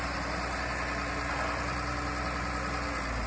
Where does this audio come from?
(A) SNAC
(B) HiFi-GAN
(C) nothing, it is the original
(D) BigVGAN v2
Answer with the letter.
C